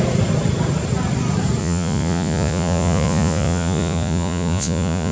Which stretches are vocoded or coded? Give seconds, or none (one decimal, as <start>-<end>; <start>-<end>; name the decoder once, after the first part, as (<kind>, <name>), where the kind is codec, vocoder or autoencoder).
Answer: 1.6-5.1 (vocoder, Vocos)